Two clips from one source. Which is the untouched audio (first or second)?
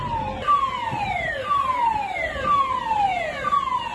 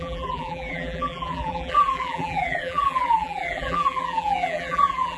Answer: first